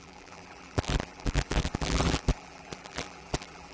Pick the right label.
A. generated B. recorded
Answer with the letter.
A